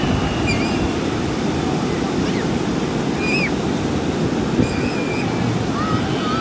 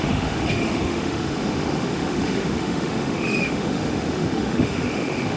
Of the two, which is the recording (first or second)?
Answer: first